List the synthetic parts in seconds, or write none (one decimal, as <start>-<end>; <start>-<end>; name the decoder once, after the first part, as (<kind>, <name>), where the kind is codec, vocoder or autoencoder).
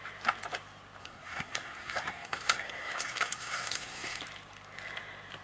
1.0-4.2 (codec, SNAC)